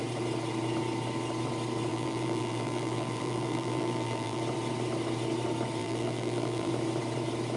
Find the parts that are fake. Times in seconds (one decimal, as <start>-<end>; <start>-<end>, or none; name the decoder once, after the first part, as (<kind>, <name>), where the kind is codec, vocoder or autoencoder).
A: 1.9-4.4 (vocoder, BigVGAN v2); 5.8-6.7